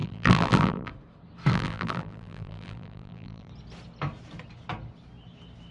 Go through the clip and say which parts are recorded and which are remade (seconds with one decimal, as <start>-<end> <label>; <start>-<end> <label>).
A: 0.0-0.9 remade; 0.9-1.5 recorded; 1.5-3.5 remade; 3.5-5.7 recorded